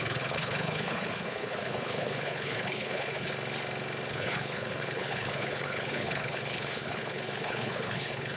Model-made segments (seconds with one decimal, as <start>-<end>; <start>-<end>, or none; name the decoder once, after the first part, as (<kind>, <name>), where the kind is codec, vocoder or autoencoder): 0.0-3.3 (codec, HILCodec); 4.1-8.4